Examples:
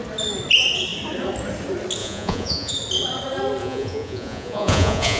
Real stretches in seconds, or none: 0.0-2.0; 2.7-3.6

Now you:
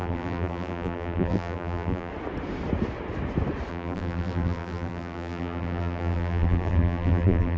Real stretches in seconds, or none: 2.1-3.7

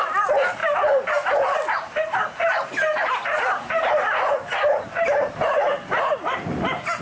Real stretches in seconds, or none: 0.0-7.0

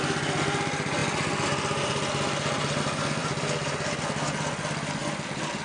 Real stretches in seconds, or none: 0.0-3.2; 4.0-5.0

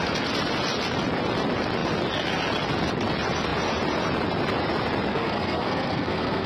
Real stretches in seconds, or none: 0.0-5.1

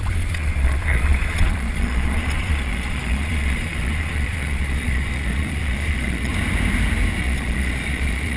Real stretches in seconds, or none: 6.3-7.2